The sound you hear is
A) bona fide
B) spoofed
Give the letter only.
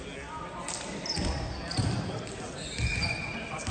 A